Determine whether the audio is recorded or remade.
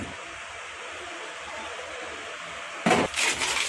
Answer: recorded